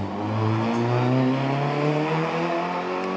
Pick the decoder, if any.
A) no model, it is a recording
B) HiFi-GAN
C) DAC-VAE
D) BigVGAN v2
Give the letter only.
A